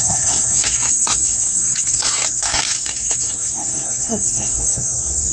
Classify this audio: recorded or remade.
remade